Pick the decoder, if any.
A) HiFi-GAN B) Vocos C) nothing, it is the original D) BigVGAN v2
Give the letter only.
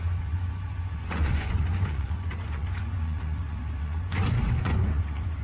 B